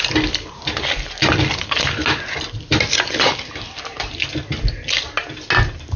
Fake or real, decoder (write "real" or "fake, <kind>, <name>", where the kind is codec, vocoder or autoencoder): real